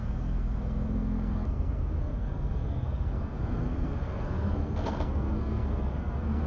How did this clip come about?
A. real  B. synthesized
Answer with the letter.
B